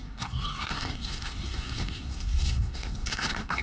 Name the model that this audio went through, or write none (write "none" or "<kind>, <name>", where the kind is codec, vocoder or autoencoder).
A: codec, SNAC